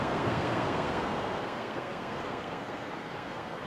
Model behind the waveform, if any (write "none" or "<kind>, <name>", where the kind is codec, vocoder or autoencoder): codec, SNAC